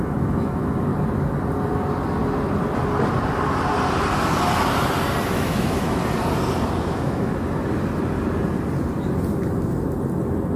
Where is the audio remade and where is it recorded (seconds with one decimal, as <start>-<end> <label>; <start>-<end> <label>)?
0.0-0.9 remade; 0.9-5.3 recorded; 5.3-6.0 remade; 6.0-6.8 recorded; 6.8-7.3 remade; 7.3-10.6 recorded